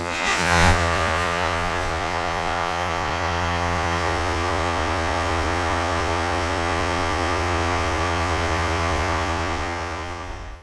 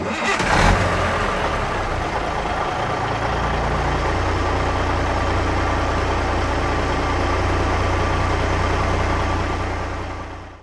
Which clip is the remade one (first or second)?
first